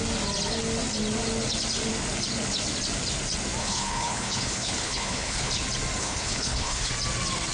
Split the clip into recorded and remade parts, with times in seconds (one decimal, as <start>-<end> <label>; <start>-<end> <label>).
0.0-3.6 recorded; 3.6-5.5 remade; 5.5-6.0 recorded; 6.0-6.9 remade; 6.9-7.5 recorded